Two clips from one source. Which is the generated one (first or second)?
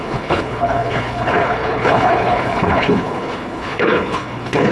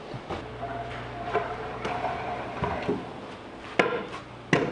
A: first